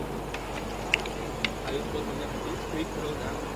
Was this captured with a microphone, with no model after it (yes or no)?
yes